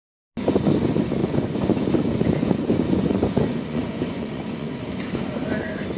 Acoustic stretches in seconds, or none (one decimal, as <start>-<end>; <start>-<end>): 0.0-1.2; 4.8-6.0